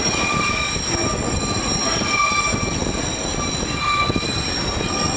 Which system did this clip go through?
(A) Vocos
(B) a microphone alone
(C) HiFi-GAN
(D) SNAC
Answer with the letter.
B